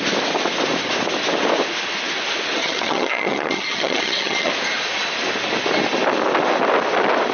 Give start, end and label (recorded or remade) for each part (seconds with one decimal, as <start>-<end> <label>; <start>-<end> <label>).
0.0-2.6 recorded; 2.6-4.5 remade; 4.5-7.3 recorded